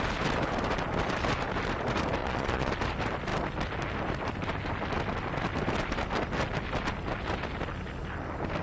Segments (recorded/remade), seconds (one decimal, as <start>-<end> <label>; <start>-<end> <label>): 0.0-2.2 recorded; 2.2-2.7 remade; 2.7-8.6 recorded